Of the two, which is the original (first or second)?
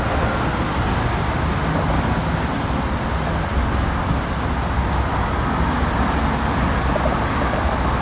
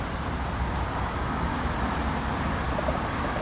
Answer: first